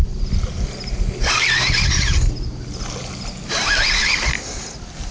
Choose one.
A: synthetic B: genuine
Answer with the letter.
B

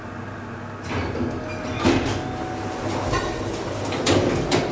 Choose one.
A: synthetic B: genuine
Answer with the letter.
B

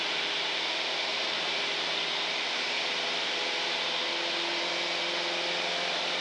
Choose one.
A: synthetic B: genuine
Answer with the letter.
B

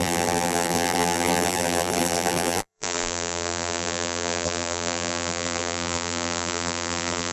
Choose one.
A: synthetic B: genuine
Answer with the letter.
A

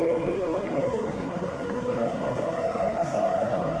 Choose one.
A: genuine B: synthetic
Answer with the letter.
B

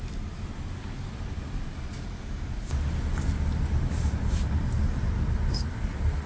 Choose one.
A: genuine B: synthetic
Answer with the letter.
A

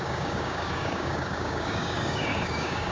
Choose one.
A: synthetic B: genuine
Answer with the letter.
A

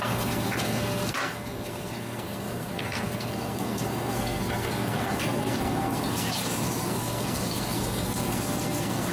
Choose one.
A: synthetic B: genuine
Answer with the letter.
A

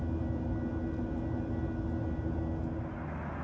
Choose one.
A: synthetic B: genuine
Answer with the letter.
B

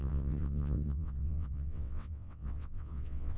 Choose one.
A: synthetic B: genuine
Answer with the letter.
A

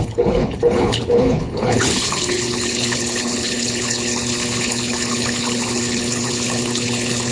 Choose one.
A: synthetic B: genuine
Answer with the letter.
A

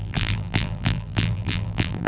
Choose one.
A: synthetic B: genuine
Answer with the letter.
A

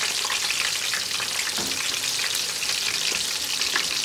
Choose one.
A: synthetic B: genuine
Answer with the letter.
B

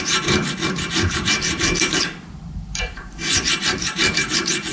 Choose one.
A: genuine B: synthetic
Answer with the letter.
B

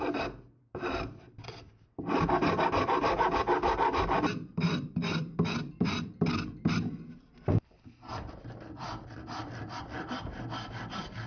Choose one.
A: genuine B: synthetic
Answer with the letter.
B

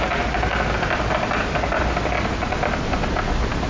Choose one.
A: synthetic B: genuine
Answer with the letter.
B